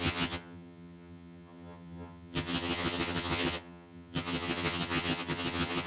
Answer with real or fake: fake